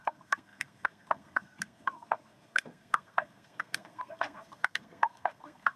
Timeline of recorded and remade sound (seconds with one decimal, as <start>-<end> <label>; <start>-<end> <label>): 0.0-5.8 remade